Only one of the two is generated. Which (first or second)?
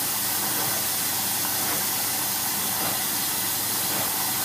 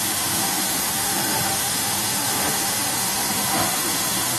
second